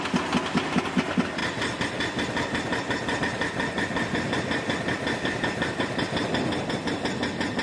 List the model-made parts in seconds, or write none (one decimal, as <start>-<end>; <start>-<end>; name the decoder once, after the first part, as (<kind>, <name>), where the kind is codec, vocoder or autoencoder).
none